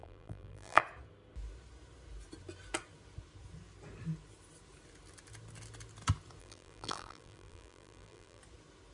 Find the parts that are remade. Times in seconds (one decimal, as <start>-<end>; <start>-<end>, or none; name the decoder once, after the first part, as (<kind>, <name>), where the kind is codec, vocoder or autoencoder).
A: 0.0-0.8 (vocoder, BigVGAN v2); 6.4-8.4